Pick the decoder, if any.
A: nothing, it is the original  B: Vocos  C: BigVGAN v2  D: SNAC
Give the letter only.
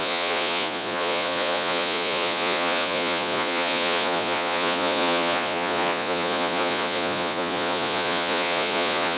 B